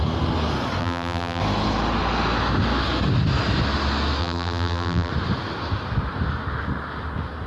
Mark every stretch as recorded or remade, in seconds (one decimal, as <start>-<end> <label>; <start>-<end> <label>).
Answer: 0.0-0.8 recorded; 0.8-1.4 remade; 1.4-4.2 recorded; 4.2-5.1 remade; 5.1-7.5 recorded